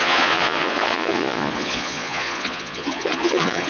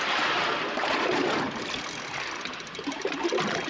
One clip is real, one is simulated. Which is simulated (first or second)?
first